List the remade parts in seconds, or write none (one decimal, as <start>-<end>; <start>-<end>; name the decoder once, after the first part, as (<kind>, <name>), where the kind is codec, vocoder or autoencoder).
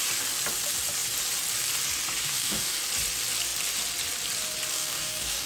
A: 2.2-2.8 (codec, DAC); 4.7-5.5